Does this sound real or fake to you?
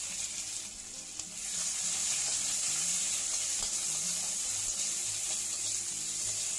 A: real